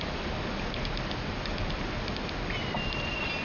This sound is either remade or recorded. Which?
recorded